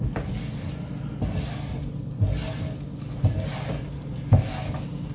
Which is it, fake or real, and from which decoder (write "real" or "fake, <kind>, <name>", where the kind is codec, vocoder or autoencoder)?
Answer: real